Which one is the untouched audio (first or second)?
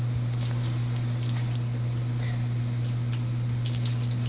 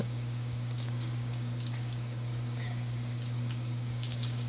first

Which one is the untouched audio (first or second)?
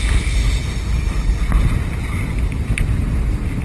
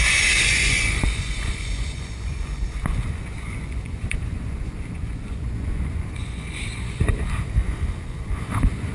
first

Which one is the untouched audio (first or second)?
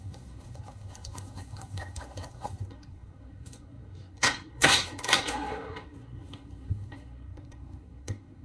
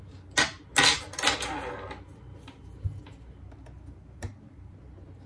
second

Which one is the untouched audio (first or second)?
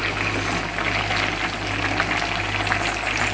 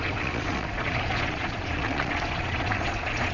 first